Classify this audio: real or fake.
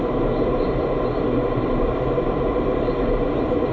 fake